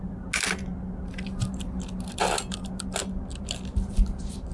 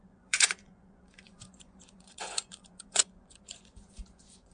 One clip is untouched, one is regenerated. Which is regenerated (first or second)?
second